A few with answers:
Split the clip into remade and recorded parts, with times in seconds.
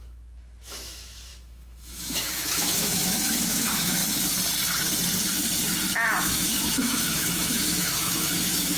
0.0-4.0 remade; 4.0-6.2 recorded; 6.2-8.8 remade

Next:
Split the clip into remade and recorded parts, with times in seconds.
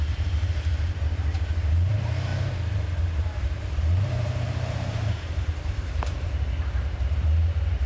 0.0-2.3 remade; 2.3-3.0 recorded; 3.0-7.9 remade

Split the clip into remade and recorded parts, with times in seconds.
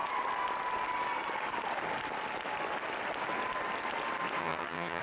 0.0-4.4 recorded; 4.4-5.0 remade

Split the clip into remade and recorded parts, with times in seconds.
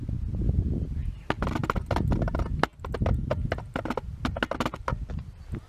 0.0-5.7 recorded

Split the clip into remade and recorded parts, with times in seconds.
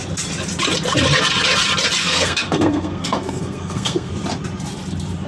0.0-2.0 recorded; 2.0-4.1 remade; 4.1-5.3 recorded